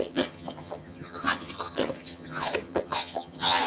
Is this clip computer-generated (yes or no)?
yes